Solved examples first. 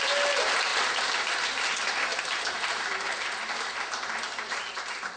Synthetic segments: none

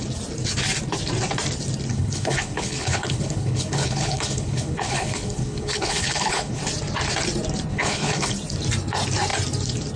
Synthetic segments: 1.9-6.6 (codec, HILCodec); 7.7-8.3